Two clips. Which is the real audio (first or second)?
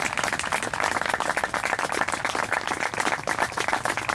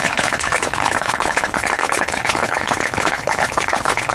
first